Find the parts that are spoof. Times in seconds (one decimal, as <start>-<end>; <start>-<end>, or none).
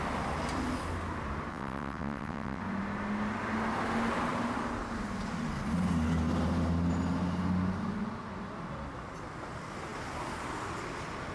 1.5-2.6